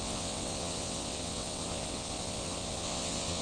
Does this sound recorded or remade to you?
remade